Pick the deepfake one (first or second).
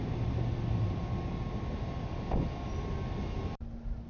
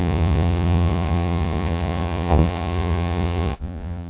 second